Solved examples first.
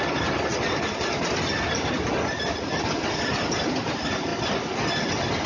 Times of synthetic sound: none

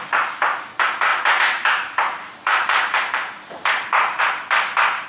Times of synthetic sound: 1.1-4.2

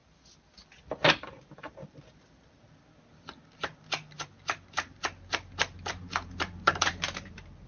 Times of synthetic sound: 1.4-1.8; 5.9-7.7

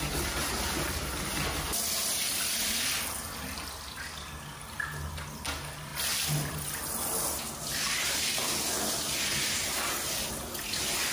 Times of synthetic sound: none

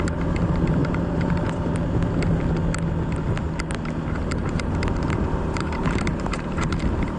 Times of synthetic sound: 0.8-1.6; 4.4-6.8

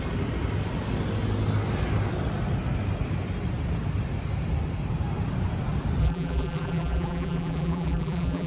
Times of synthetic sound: 6.0-8.5

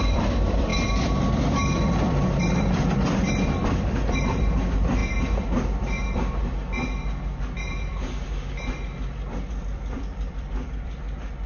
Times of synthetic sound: 0.0-5.0; 9.5-11.5